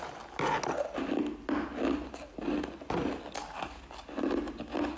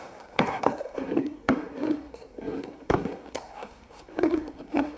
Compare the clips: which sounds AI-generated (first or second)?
second